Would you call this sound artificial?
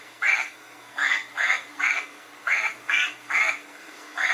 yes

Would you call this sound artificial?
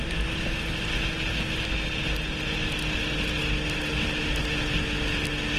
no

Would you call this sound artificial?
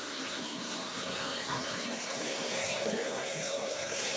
yes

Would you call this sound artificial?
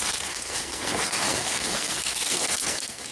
yes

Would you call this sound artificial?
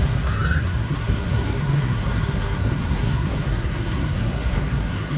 yes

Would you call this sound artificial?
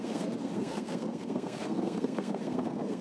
yes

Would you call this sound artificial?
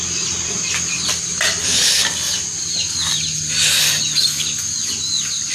no